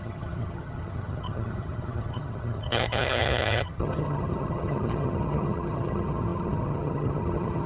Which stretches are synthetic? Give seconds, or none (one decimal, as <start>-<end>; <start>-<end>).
0.0-7.7